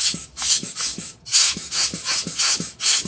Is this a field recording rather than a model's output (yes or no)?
no